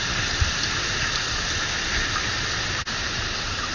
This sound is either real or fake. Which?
real